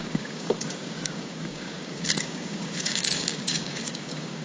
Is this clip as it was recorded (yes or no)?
no